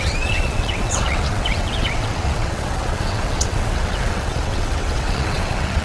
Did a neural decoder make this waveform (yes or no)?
yes